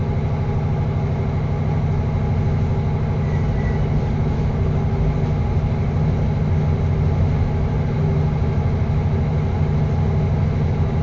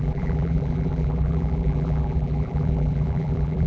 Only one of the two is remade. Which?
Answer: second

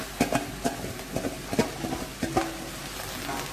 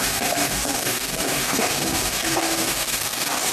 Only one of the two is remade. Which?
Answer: second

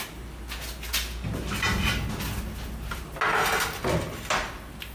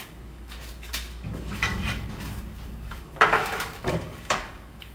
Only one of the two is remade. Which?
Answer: second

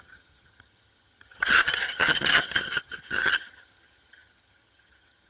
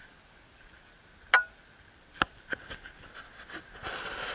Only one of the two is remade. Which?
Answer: first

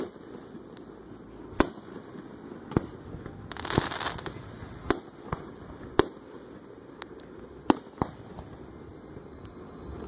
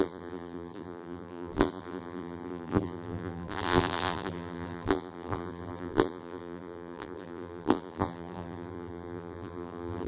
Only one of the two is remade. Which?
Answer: second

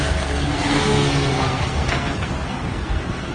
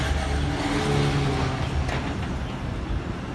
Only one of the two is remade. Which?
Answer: first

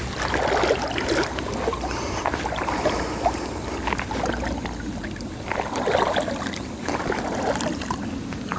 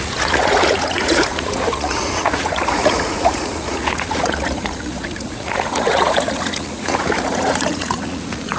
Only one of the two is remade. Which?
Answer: second